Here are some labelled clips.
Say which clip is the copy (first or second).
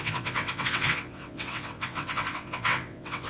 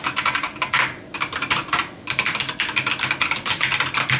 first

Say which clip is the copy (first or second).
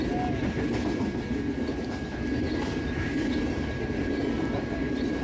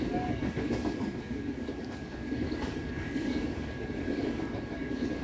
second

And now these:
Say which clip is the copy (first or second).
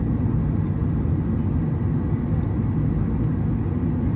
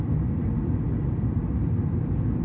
second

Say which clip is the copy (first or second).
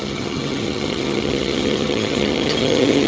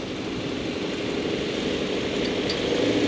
first